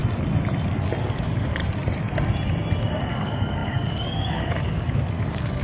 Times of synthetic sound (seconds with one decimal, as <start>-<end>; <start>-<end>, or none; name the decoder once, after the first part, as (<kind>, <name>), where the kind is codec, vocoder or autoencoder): 1.0-1.6 (codec, DAC); 3.1-5.6